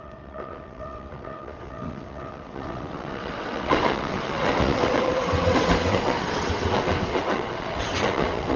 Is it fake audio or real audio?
fake